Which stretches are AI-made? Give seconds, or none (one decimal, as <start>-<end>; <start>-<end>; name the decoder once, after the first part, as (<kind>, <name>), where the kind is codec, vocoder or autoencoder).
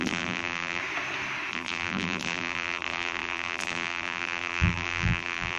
0.0-0.8 (vocoder, BigVGAN v2); 1.5-5.6